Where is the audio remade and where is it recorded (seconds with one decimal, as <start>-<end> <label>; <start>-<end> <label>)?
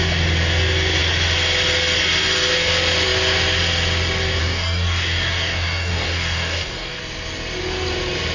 0.0-4.4 recorded; 4.4-7.0 remade; 7.0-8.3 recorded